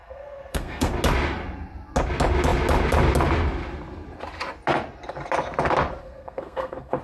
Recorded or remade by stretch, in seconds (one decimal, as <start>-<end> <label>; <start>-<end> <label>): 0.0-0.9 remade; 0.9-6.0 recorded; 6.0-7.0 remade